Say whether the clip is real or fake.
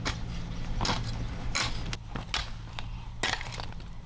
real